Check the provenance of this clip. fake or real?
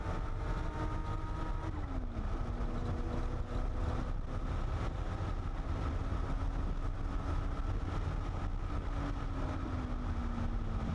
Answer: real